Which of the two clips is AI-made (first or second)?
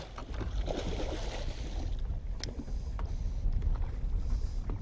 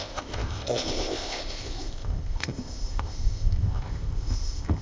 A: second